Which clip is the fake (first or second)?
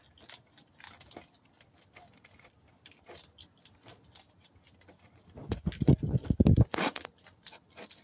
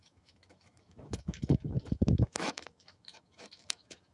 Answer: second